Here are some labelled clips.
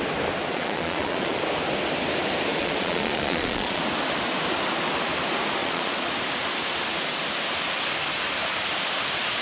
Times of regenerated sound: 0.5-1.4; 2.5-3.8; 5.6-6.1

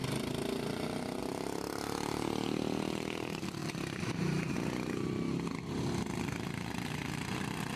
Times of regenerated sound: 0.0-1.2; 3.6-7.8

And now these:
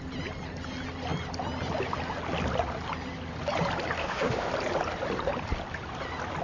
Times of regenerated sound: 4.0-4.5

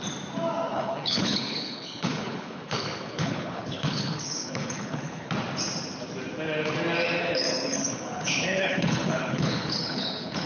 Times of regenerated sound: 0.7-5.3; 7.2-10.5

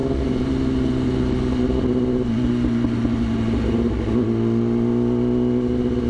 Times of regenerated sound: none

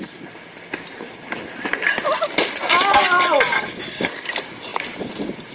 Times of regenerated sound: 0.0-5.5